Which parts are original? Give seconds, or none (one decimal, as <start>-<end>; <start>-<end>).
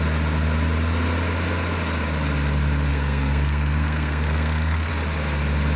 0.0-2.9; 4.9-5.8